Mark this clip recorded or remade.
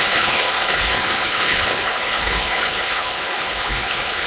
remade